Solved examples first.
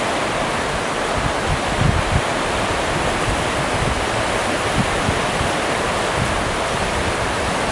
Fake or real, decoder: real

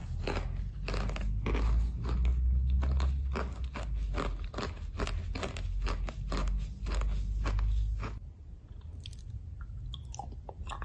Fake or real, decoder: real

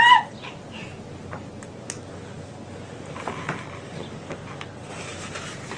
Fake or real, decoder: real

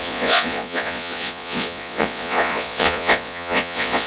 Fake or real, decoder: fake, vocoder, Vocos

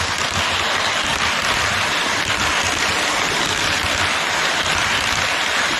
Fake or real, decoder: real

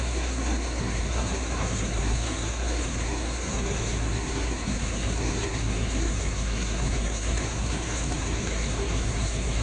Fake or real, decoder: fake, codec, SNAC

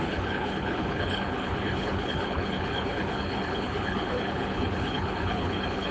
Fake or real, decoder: fake, codec, HILCodec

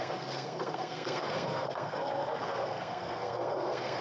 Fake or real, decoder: fake, codec, SNAC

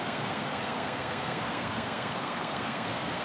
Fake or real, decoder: fake, codec, SNAC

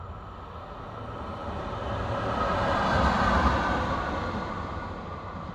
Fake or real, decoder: real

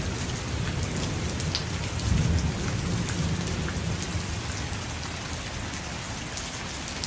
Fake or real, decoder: real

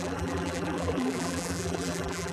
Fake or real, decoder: fake, vocoder, BigVGAN v2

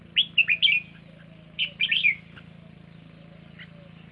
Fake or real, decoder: real